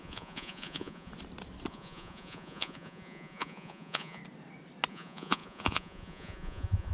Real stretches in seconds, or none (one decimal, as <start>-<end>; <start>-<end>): 1.1-1.7; 4.2-4.9